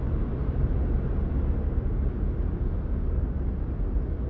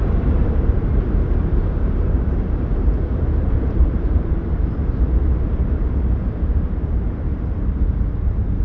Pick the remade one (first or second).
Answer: second